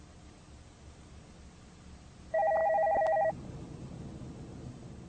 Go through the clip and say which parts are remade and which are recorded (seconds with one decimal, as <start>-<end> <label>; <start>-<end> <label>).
0.0-5.1 recorded